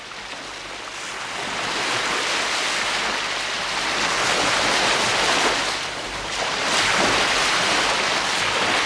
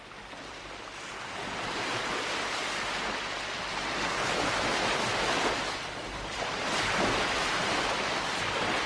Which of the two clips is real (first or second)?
first